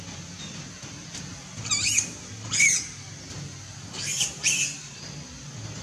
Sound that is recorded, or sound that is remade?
recorded